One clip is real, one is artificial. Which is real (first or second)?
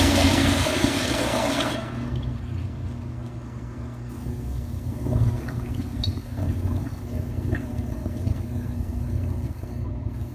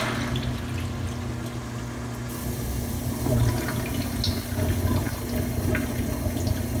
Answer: second